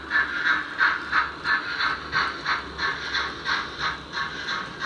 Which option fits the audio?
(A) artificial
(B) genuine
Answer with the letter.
B